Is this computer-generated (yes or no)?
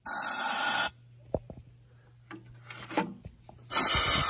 no